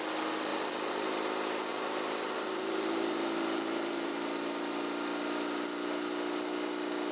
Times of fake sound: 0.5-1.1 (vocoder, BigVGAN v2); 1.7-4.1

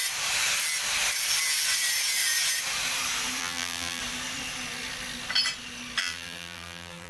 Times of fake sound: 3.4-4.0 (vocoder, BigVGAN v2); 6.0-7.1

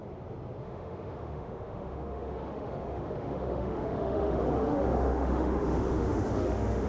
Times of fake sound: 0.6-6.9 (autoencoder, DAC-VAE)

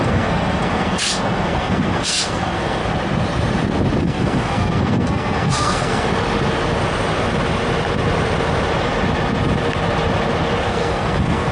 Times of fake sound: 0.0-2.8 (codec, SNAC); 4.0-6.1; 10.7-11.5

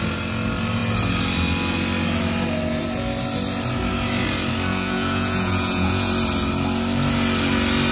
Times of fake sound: 4.7-6.1 (vocoder, Vocos)

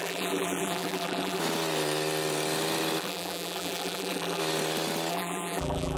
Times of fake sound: 0.0-1.4 (vocoder, BigVGAN v2); 3.0-4.4; 5.1-6.0